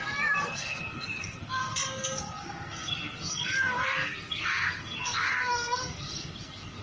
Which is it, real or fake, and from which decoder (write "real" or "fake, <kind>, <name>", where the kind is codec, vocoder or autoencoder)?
fake, codec, SNAC